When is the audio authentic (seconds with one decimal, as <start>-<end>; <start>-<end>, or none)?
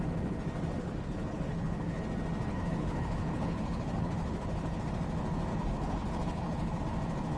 0.0-0.8; 2.0-2.5; 4.9-5.5; 6.8-7.4